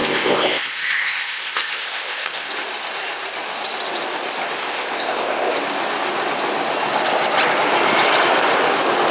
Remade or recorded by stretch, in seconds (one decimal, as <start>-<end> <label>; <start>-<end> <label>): 0.0-2.5 remade; 2.5-4.6 recorded; 4.6-5.5 remade; 5.5-9.1 recorded